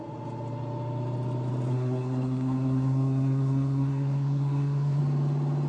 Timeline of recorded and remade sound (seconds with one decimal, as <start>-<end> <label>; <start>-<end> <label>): 0.0-1.7 recorded; 1.7-5.0 remade; 5.0-5.7 recorded